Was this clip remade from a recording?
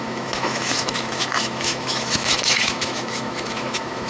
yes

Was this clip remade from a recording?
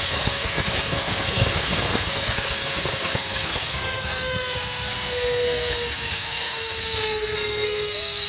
yes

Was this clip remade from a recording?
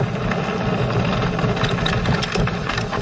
no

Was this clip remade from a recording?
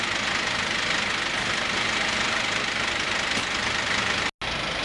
no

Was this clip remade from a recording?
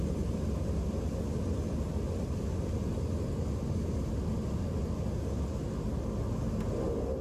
no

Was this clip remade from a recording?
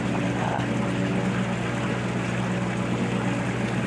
no